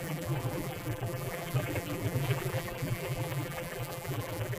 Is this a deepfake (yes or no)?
yes